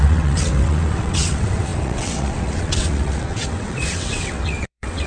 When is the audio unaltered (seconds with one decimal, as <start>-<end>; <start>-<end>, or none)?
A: none